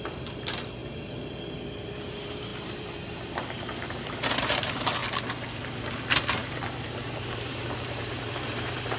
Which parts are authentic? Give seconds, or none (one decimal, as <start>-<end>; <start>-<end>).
5.0-5.8